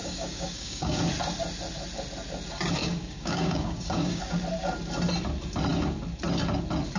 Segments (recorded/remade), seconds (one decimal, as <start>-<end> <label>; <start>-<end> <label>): 0.0-1.0 remade; 1.0-2.8 recorded; 2.8-4.2 remade; 4.2-7.0 recorded